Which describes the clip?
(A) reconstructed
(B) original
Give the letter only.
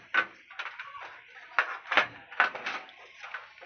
B